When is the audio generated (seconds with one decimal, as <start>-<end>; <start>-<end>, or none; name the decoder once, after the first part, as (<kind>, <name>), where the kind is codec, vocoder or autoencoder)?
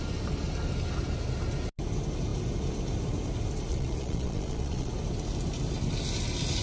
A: 3.7-4.9 (vocoder, Vocos)